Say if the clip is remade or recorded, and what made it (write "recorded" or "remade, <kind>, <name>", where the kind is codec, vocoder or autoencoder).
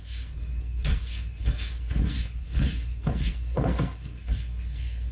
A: remade, codec, SNAC